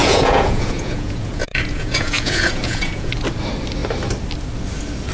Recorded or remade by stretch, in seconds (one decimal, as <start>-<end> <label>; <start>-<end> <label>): 0.0-3.1 remade; 3.1-5.1 recorded